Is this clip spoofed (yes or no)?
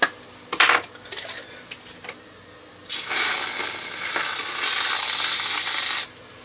no